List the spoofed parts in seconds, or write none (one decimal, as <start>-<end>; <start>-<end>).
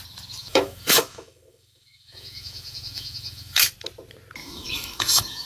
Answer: 0.4-3.7; 4.4-5.5